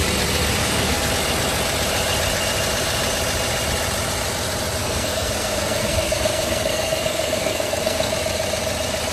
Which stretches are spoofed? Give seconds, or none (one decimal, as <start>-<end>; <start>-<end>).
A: 0.6-1.1; 4.8-8.1